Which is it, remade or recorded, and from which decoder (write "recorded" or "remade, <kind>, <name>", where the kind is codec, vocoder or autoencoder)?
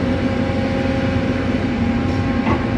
recorded